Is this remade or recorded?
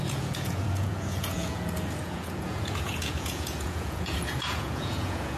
remade